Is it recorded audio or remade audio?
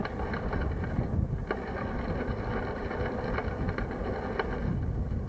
recorded